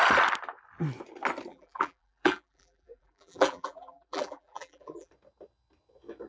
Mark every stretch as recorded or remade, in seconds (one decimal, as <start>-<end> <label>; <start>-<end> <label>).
0.0-1.5 recorded; 1.5-5.1 remade; 5.1-6.3 recorded